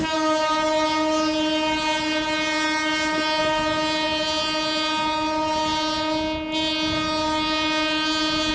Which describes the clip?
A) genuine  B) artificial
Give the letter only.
A